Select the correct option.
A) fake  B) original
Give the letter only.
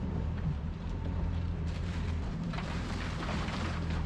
A